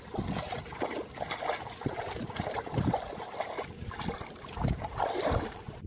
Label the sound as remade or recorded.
recorded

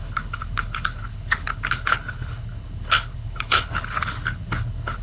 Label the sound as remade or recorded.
remade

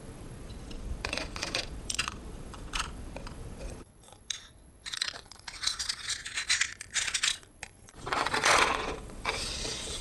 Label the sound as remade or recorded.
remade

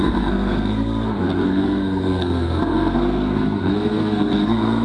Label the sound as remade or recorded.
remade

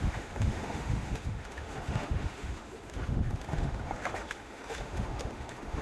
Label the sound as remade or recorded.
remade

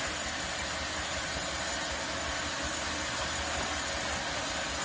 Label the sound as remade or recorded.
recorded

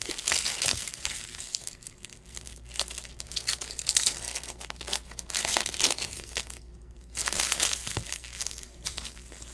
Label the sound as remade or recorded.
remade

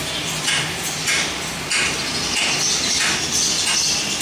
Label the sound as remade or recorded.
recorded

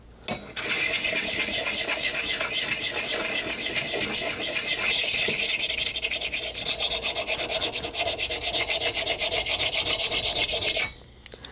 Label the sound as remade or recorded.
recorded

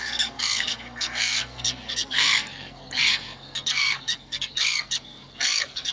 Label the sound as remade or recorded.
remade